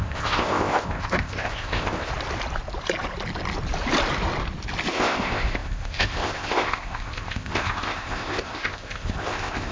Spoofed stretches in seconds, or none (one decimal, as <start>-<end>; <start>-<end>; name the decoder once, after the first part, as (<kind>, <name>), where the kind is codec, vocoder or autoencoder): 0.0-2.1 (codec, ZipCodec); 4.9-9.7